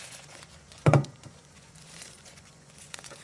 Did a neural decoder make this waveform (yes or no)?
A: yes